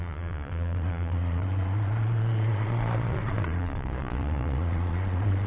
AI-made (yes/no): yes